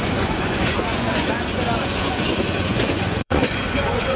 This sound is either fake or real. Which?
fake